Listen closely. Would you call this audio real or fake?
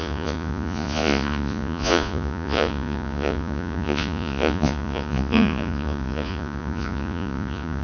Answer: fake